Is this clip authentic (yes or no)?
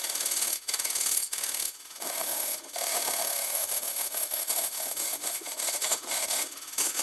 no